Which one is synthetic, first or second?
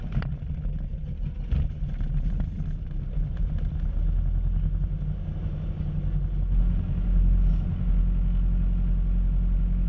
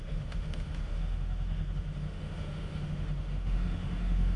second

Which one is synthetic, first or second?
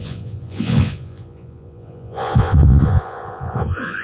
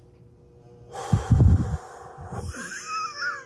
first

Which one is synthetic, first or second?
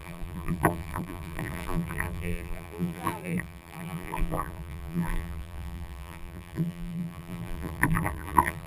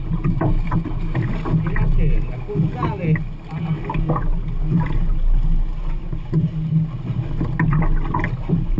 first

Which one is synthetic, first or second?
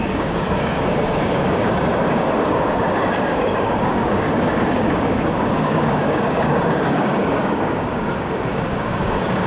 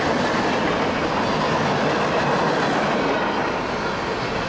first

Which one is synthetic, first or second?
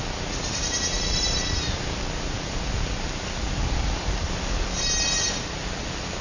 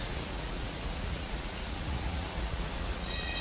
second